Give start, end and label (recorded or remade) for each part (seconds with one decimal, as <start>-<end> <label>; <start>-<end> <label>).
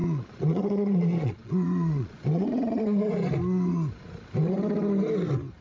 0.0-2.8 remade; 2.8-5.6 recorded